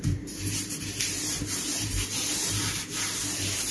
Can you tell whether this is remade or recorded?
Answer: remade